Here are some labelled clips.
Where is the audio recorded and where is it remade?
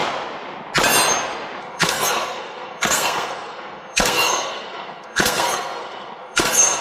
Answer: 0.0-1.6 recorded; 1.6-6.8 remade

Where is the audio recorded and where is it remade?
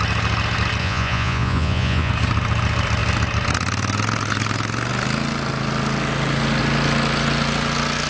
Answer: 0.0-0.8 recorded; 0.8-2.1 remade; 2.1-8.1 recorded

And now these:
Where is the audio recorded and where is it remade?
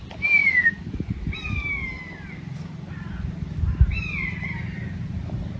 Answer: 0.0-5.6 recorded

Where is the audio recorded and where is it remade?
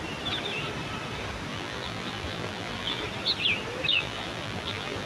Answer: 0.0-1.5 recorded; 1.5-3.0 remade; 3.0-3.9 recorded; 3.9-5.1 remade